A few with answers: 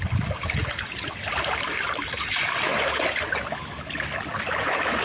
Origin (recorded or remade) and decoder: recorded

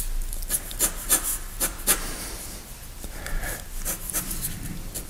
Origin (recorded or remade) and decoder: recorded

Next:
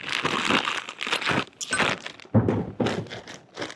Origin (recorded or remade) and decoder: recorded